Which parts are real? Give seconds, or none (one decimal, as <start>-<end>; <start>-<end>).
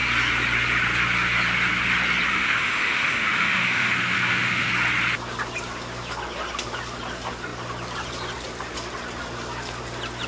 0.0-2.3; 4.7-10.3